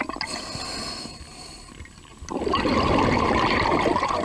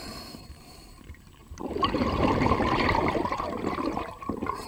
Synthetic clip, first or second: second